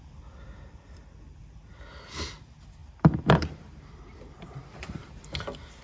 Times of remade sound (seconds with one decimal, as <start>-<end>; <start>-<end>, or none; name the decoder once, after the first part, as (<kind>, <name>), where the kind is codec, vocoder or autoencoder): 2.8-5.2 (vocoder, BigVGAN v2)